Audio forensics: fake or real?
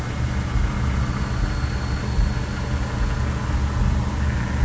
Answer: real